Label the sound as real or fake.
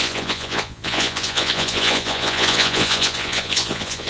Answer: fake